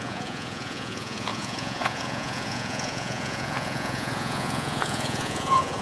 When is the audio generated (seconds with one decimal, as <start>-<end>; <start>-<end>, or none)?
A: 0.0-5.8

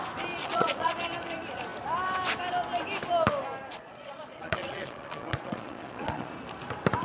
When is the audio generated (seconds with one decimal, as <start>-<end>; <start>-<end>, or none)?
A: 0.4-0.9; 3.7-6.3

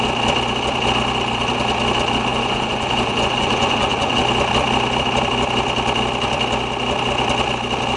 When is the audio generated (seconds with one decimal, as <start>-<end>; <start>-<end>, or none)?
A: 2.3-4.2

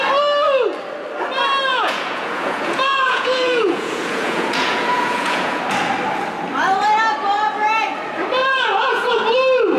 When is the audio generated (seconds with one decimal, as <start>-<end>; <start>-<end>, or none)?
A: 1.7-5.6; 8.4-9.1